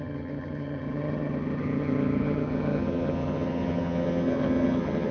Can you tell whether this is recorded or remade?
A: remade